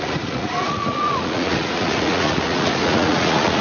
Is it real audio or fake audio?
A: fake